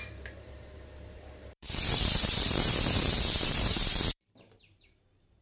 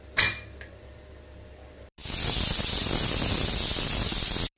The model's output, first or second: first